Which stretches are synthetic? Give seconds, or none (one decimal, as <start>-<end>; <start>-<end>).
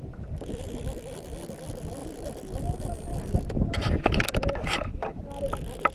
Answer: 2.0-2.6; 3.1-5.2